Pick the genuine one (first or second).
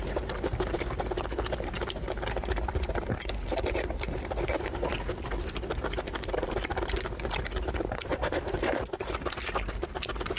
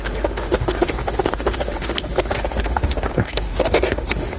first